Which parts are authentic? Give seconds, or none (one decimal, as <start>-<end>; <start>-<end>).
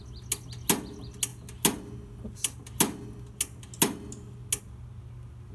0.0-5.5